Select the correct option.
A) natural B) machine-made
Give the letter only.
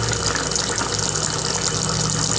A